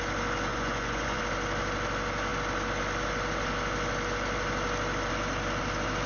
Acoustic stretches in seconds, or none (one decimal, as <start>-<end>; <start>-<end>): 0.0-0.5; 1.2-6.1